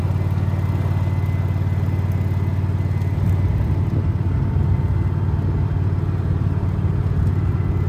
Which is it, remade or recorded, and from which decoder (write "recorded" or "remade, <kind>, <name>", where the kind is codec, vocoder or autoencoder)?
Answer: recorded